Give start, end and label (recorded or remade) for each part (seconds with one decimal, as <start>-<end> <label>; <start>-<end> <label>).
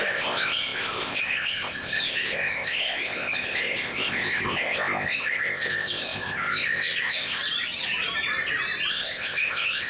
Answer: 0.0-7.4 remade; 7.4-8.9 recorded; 8.9-9.9 remade